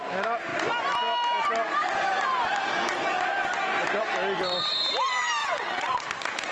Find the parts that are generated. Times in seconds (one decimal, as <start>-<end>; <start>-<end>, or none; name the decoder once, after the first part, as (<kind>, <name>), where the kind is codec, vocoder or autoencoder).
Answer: 5.4-6.0 (vocoder, WaveNeXt)

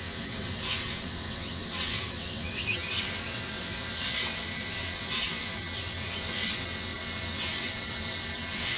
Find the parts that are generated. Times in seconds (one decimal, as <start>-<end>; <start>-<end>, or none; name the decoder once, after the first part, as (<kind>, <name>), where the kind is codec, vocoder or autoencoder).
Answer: 0.0-8.8 (vocoder, WaveNeXt)

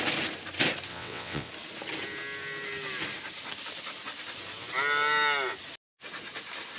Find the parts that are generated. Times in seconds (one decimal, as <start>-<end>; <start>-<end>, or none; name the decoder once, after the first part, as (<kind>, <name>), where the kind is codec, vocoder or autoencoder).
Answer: 0.9-1.5 (vocoder, WaveNeXt)

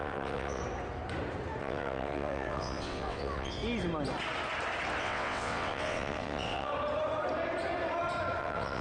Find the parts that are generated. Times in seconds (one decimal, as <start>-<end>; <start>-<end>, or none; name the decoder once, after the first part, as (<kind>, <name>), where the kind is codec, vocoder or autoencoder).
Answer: 0.0-0.6 (vocoder, WaveNeXt); 1.6-3.6; 5.0-6.7; 8.4-8.8

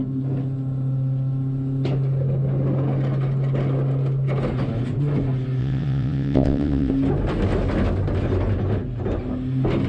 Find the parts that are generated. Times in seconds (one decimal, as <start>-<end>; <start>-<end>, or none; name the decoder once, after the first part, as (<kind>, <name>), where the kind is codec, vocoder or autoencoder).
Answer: 5.6-6.9 (vocoder, WaveNeXt)

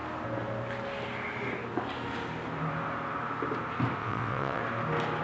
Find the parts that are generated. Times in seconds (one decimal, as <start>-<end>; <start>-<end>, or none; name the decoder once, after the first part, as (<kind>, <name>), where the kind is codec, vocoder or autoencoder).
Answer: 4.0-4.6 (vocoder, WaveNeXt)

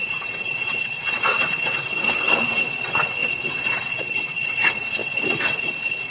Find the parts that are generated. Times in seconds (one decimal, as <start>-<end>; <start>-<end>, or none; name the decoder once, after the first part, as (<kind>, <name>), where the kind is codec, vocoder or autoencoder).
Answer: 0.0-6.1 (vocoder, WaveNeXt)